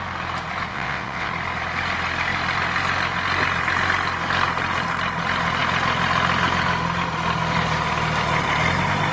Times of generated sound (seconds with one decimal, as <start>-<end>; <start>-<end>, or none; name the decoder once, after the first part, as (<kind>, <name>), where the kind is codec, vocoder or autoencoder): 0.7-1.3 (vocoder, WaveNeXt)